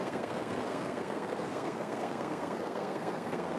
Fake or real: fake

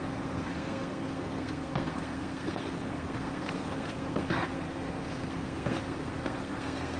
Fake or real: fake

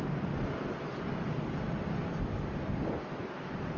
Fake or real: real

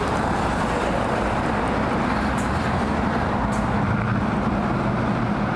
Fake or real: real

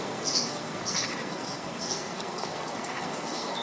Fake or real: fake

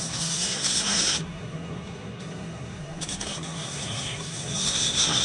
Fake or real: fake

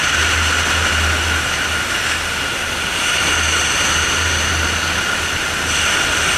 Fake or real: real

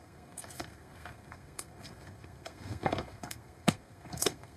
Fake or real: fake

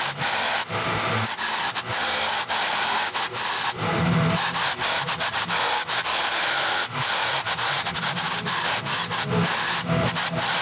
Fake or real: real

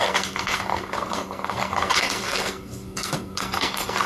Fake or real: fake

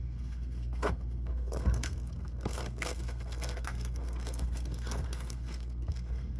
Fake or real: fake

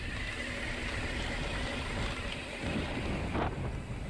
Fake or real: real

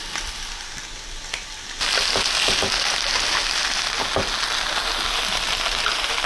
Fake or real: real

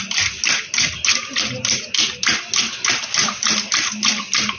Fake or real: real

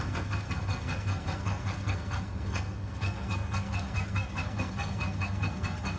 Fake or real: fake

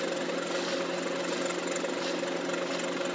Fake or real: real